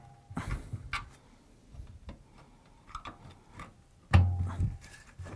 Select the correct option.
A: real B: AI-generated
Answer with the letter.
A